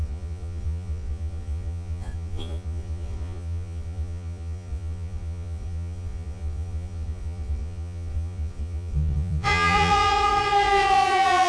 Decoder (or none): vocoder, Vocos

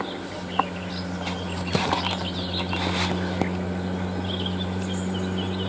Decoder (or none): none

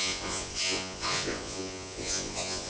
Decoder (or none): vocoder, Vocos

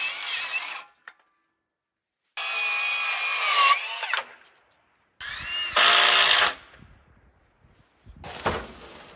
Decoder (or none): none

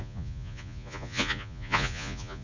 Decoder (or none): vocoder, Vocos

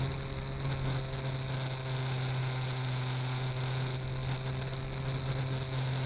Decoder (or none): none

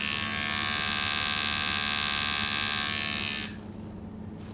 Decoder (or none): none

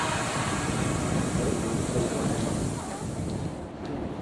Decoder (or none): none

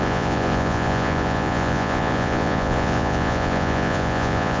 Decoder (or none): vocoder, Vocos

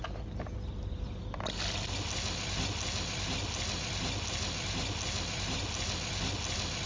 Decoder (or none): none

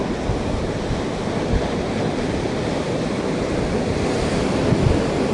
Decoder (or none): none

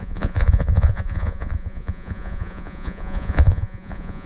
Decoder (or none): vocoder, Vocos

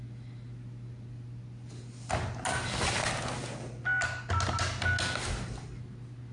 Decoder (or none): none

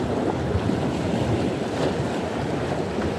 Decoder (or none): none